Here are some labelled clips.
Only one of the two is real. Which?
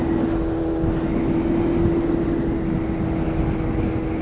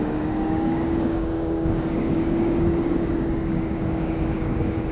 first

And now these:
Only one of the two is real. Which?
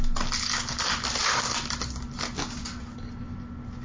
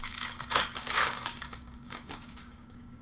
first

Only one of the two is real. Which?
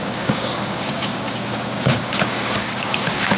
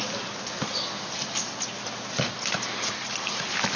second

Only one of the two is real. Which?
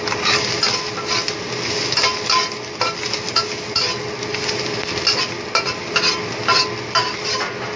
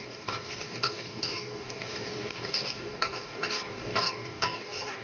first